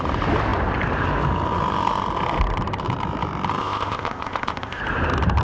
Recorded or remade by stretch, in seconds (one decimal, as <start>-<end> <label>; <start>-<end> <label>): 0.0-3.6 recorded; 3.6-4.8 remade; 4.8-5.4 recorded